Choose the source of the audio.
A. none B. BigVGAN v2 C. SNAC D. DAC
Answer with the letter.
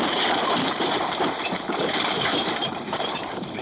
B